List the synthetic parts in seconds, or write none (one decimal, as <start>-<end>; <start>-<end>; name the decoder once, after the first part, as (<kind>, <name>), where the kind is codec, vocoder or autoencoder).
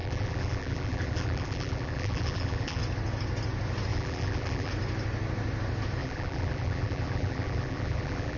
0.0-2.8 (vocoder, BigVGAN v2); 3.9-4.7; 6.0-8.4